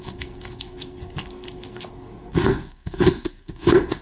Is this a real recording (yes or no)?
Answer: no